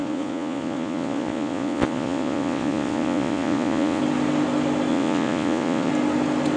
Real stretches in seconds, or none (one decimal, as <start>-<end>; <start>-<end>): 4.0-4.9; 5.9-6.6